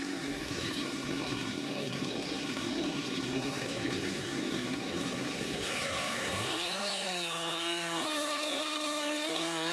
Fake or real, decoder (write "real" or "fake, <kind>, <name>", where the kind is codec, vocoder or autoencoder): fake, codec, SNAC